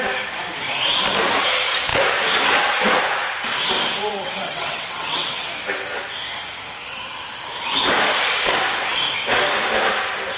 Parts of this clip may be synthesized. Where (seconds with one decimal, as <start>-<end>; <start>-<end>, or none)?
4.1-5.5